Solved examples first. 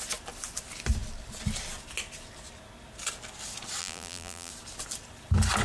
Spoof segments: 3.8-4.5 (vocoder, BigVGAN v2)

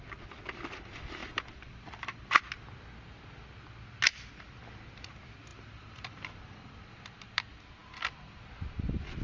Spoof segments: 1.2-2.4 (vocoder, BigVGAN v2); 5.5-7.2

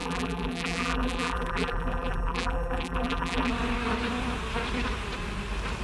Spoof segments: 0.0-3.5 (vocoder, BigVGAN v2)

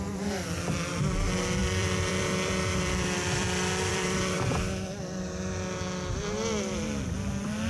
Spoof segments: 1.6-4.9 (vocoder, BigVGAN v2)

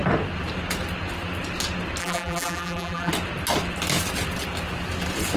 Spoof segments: 2.0-3.1 (vocoder, BigVGAN v2)

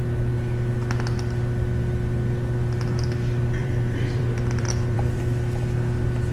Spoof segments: 3.6-5.2 (vocoder, BigVGAN v2)